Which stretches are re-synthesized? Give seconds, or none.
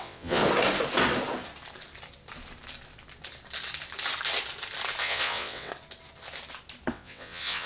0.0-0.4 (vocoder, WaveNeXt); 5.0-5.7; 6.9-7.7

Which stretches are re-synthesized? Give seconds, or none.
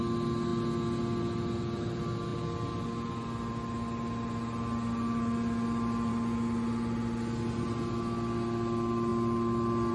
none